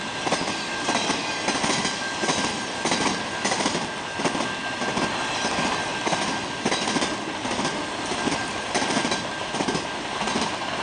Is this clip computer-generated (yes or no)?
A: no